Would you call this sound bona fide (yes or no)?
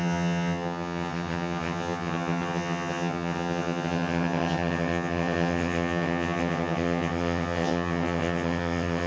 no